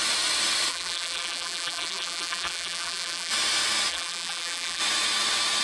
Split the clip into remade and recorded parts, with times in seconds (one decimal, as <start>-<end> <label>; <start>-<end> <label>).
0.0-0.7 recorded; 0.7-3.3 remade; 3.3-3.9 recorded; 3.9-4.8 remade; 4.8-5.6 recorded